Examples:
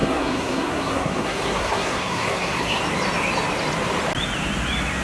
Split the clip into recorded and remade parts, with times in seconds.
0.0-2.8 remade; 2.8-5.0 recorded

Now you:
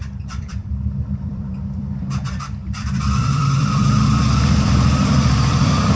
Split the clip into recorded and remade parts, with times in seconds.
0.0-6.0 remade